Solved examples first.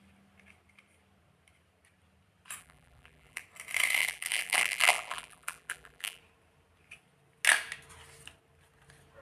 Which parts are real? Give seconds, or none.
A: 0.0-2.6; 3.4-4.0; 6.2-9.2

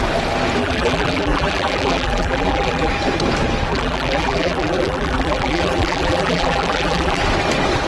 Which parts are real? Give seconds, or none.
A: 0.0-0.6; 2.9-3.7; 7.2-7.9

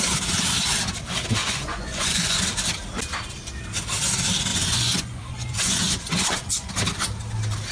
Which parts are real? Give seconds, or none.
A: 0.0-1.4; 2.4-4.5; 6.7-7.7

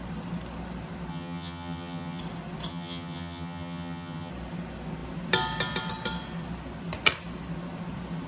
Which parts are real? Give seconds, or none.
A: 0.0-1.1; 2.2-2.7; 4.3-8.3